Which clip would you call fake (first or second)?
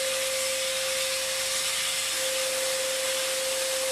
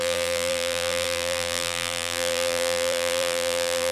second